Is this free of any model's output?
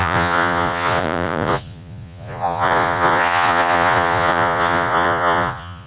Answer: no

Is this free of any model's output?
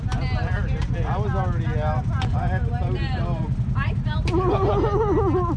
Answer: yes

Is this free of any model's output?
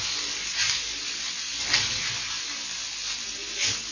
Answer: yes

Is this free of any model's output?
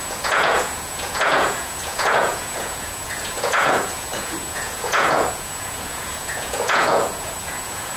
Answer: no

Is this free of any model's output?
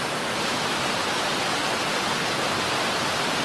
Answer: yes